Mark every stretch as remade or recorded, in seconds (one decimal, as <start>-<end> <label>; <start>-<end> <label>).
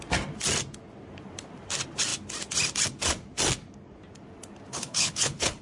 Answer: 0.0-4.7 recorded; 4.7-5.6 remade